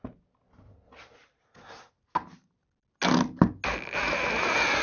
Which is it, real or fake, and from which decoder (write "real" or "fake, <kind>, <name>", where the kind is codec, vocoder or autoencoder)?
real